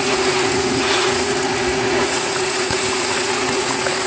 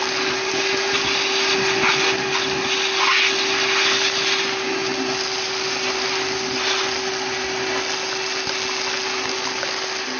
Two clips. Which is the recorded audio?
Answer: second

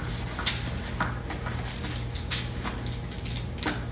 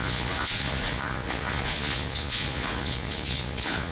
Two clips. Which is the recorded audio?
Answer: first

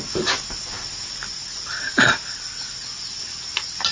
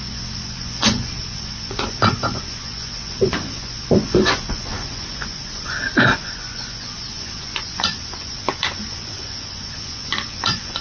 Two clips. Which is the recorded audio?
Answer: first